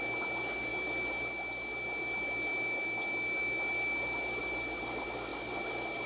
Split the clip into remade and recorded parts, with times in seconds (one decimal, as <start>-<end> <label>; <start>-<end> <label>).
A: 0.0-6.1 recorded